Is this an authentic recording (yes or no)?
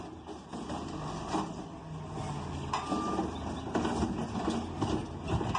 yes